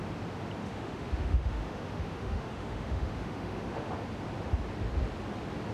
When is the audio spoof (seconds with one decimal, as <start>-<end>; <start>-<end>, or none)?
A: 0.6-3.9